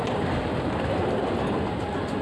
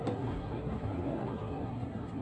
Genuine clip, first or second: first